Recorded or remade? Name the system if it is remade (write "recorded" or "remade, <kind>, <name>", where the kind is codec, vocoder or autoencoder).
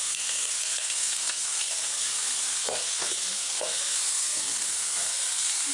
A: remade, codec, SNAC